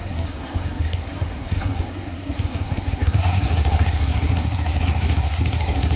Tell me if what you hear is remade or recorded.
remade